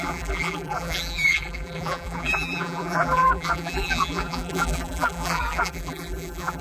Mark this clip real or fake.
fake